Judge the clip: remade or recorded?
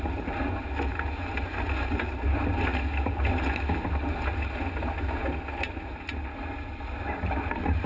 recorded